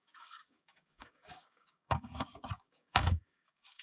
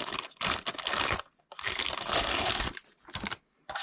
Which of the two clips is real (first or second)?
second